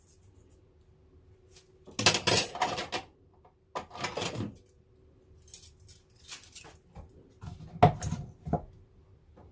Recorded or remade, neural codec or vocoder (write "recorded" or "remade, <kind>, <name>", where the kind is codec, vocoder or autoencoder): recorded